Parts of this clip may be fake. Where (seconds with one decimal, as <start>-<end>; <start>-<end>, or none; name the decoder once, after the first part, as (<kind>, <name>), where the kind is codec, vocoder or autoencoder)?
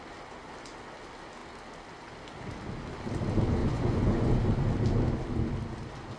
3.6-4.3 (vocoder, Vocos)